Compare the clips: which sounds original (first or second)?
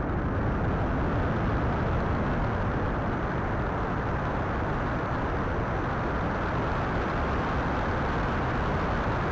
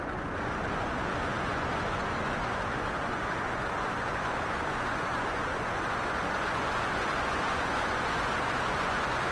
first